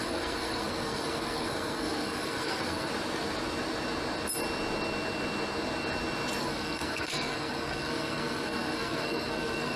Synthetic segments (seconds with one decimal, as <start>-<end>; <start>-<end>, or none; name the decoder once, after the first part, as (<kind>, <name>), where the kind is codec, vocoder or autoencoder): 0.0-2.9 (codec, SNAC); 6.4-9.8